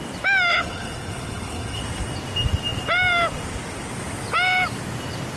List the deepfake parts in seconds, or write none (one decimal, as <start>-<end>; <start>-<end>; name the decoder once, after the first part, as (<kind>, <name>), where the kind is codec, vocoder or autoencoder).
0.5-1.8 (codec, HILCodec)